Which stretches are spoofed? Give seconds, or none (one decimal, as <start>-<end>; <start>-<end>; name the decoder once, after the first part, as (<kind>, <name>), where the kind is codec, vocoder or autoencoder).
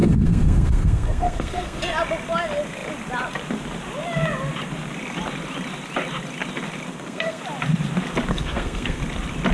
0.0-1.8 (codec, SNAC); 6.9-7.4; 8.3-9.0